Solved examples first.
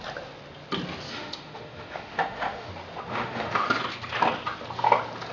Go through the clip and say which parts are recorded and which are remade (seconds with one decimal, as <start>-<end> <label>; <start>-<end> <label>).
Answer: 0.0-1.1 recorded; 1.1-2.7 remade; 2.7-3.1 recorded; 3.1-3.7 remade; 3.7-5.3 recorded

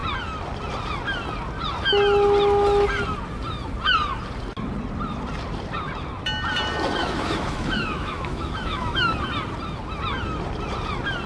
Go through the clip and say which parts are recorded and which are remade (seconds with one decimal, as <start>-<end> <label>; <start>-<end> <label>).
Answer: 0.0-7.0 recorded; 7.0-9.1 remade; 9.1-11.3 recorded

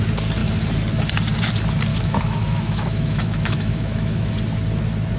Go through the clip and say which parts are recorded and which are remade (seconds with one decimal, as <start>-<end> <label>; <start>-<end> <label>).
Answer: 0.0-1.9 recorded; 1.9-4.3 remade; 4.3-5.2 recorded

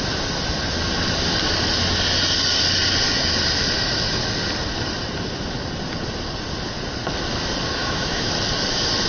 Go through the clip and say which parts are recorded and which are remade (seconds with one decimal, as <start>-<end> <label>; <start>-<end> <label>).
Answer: 0.0-7.8 recorded; 7.8-8.3 remade; 8.3-9.1 recorded

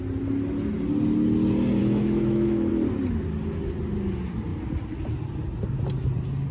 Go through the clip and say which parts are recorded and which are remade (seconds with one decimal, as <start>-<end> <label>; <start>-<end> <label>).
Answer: 0.0-1.8 recorded; 1.8-2.7 remade; 2.7-6.5 recorded

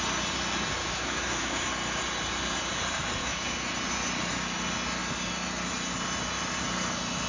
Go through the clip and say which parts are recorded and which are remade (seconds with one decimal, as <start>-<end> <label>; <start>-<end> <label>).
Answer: 0.0-0.8 recorded; 0.8-1.7 remade; 1.7-3.2 recorded; 3.2-3.7 remade; 3.7-7.3 recorded